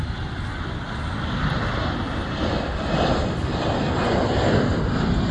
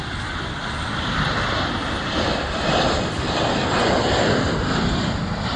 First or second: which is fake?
second